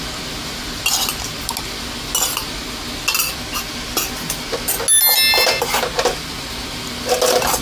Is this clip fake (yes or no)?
no